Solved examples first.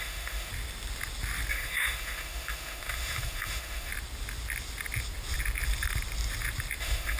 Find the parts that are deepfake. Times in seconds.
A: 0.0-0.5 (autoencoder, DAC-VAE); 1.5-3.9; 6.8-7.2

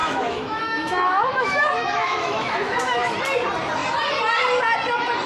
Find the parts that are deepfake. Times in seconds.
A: 0.0-3.2 (autoencoder, DAC-VAE)

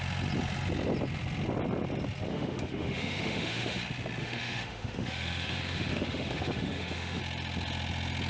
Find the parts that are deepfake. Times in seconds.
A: 2.3-3.8 (autoencoder, DAC-VAE); 4.2-7.2

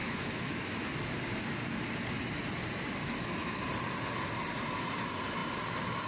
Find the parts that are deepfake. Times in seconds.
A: 0.0-0.8 (autoencoder, DAC-VAE); 3.0-3.6